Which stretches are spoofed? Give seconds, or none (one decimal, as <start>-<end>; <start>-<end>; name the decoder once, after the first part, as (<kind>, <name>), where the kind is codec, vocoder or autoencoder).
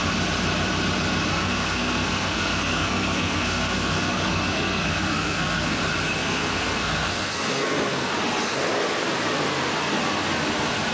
1.3-5.8 (codec, SNAC); 6.2-8.1